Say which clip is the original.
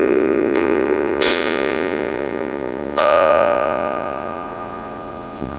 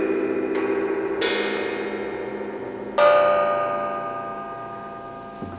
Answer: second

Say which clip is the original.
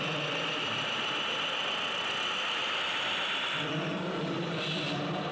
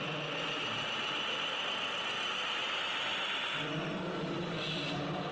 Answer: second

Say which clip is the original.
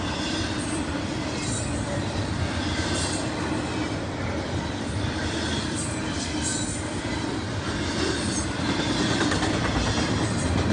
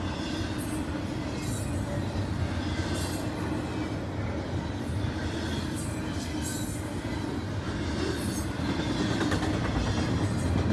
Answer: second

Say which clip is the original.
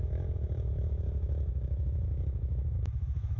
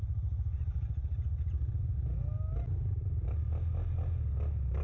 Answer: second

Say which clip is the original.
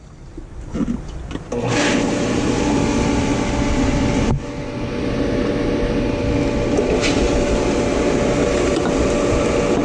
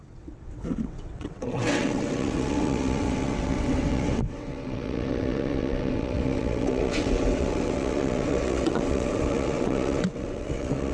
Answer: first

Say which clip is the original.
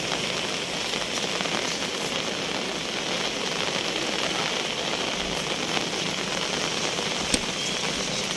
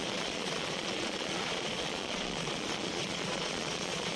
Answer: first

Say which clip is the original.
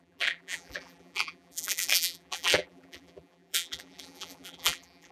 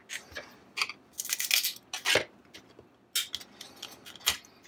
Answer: second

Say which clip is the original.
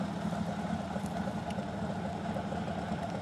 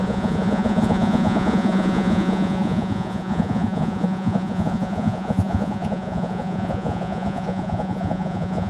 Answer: first